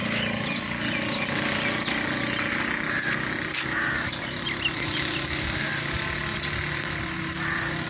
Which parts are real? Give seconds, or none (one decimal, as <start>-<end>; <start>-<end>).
0.0-7.9